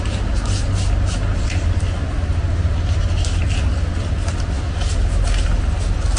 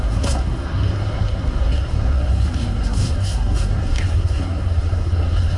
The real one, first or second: first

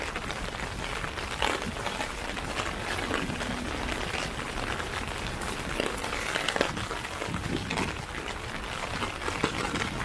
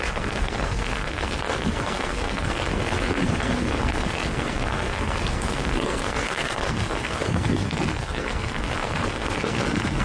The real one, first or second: first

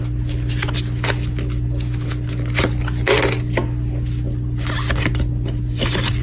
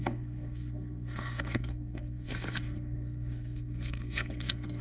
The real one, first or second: first